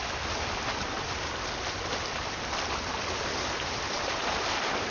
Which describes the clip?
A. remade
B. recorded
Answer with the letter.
B